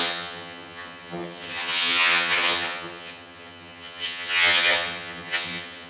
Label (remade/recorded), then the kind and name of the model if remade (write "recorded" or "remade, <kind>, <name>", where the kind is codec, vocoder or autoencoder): remade, vocoder, HiFi-GAN